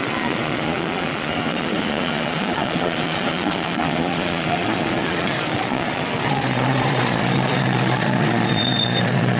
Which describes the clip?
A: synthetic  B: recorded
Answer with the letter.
A